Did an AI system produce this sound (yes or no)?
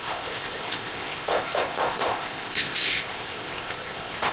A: yes